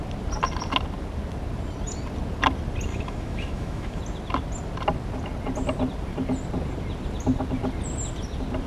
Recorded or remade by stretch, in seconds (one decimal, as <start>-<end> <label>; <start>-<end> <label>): 0.0-2.9 recorded; 2.9-4.0 remade; 4.0-8.7 recorded